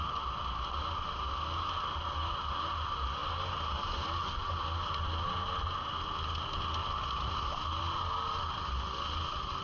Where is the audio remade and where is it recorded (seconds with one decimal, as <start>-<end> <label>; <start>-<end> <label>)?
0.0-9.6 recorded